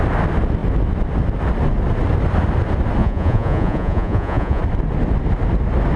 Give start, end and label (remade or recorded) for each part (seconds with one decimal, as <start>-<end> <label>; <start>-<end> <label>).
0.0-3.0 recorded; 3.0-4.6 remade; 4.6-6.0 recorded